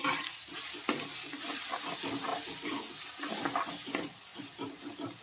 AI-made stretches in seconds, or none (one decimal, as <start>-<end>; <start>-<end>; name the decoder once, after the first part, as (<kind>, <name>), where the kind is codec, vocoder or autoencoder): none